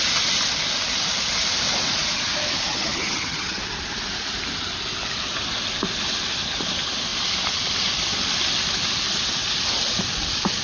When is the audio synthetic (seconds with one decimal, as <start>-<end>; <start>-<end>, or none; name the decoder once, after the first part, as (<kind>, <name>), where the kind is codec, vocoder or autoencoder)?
2.7-3.6 (vocoder, HiFi-GAN)